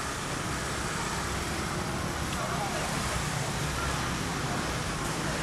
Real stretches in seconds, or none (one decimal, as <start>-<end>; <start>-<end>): none